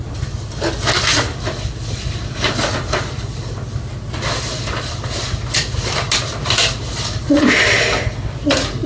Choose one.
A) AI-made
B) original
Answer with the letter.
B